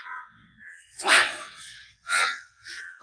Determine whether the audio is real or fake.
fake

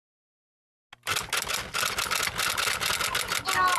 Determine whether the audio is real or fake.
real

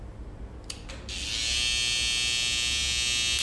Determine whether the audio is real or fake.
real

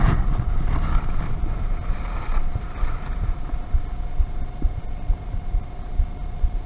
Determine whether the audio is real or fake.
real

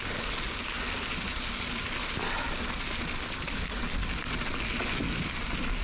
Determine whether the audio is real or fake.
real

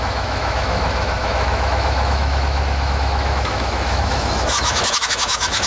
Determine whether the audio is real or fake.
fake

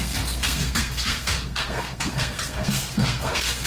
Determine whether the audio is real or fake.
fake